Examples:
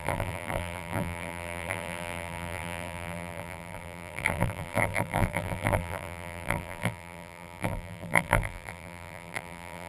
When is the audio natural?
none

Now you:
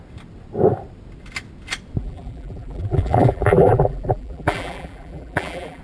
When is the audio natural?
0.0-2.0

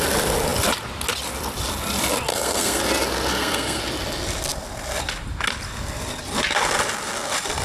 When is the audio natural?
0.0-2.3; 2.8-3.3; 3.8-7.6

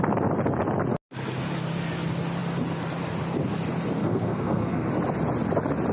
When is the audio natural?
0.0-4.0; 4.9-5.9

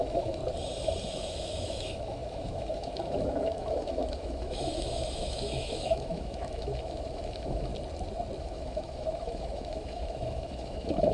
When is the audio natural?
0.4-1.1; 7.7-8.4

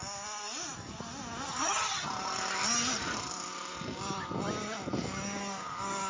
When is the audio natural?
0.0-1.5; 2.1-6.1